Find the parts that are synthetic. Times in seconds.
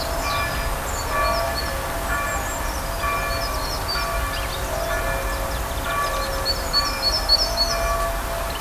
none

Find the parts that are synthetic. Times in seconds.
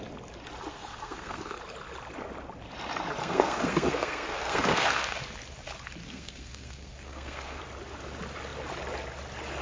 0.7-1.6; 3.2-5.2; 6.0-7.6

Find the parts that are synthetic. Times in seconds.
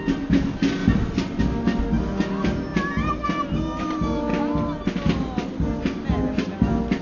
none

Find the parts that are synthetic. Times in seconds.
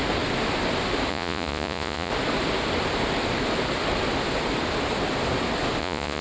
1.1-2.1; 5.8-6.2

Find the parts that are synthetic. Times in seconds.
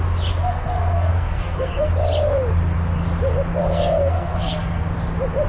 0.4-1.9; 3.6-4.8